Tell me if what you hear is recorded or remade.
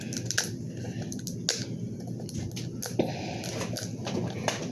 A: recorded